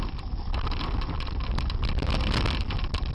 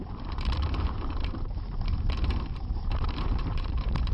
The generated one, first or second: second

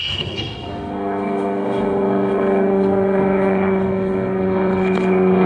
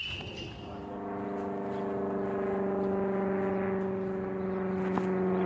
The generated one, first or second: first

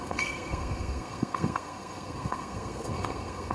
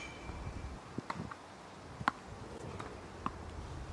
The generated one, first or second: first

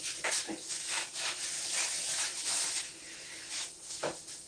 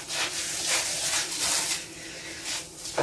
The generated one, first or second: first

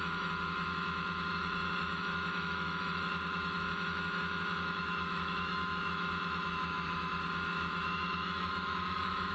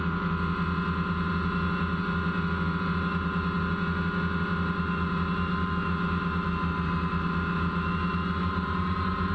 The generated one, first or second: first